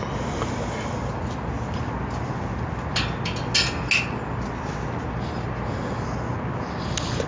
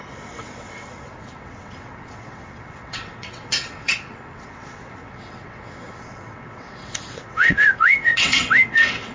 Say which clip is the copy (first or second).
second